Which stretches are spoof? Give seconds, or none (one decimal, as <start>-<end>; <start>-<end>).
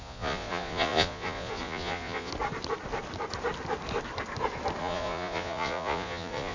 0.0-2.3; 4.8-6.5